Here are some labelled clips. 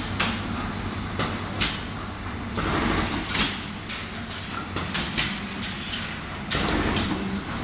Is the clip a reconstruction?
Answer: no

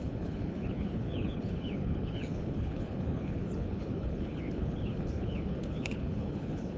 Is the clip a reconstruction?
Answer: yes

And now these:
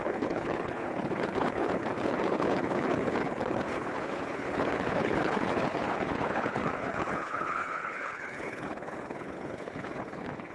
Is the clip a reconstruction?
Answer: yes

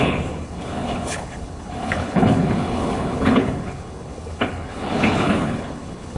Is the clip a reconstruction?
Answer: yes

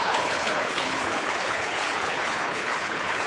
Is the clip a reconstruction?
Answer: yes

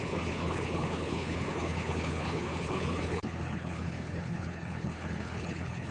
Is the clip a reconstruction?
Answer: yes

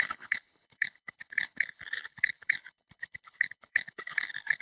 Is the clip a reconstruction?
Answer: yes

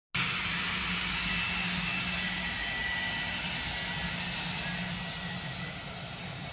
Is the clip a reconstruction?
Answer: no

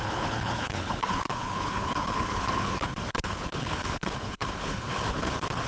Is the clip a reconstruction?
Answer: yes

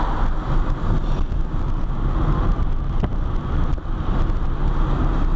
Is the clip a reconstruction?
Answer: no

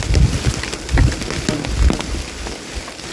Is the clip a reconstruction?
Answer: no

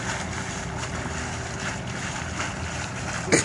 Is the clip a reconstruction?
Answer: no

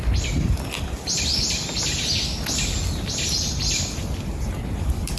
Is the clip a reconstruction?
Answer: no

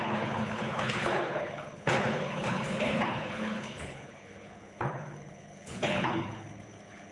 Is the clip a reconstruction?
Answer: yes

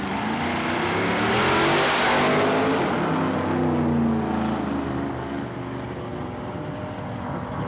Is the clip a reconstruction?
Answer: no